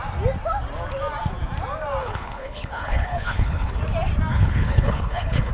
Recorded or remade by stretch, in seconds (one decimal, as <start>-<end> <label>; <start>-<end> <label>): 0.0-2.0 recorded; 2.0-3.8 remade; 3.8-4.3 recorded; 4.3-5.5 remade